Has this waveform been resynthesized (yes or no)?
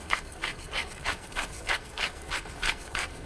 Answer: yes